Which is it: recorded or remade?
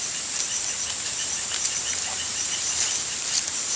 remade